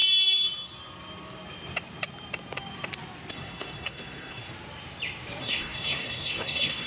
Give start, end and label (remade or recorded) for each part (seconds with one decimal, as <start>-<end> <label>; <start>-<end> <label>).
0.0-3.3 recorded; 3.3-4.5 remade; 4.5-5.4 recorded; 5.4-6.9 remade